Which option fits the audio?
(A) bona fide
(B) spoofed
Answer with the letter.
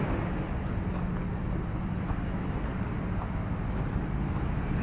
A